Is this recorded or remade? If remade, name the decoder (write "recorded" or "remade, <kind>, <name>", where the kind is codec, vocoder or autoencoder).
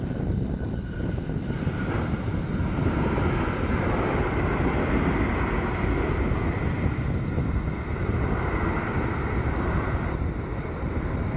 recorded